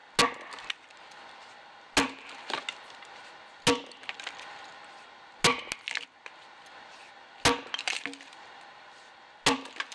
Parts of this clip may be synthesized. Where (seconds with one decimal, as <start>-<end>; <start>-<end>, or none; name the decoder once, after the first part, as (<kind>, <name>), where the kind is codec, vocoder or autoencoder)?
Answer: none